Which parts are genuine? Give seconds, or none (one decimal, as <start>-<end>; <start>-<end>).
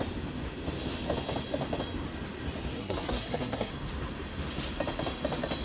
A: 0.0-2.8; 3.7-5.6